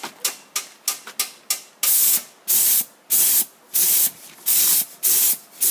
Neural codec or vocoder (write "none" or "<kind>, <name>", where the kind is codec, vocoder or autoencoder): none